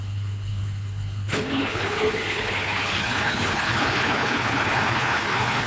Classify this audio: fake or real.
fake